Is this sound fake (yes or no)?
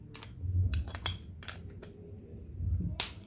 no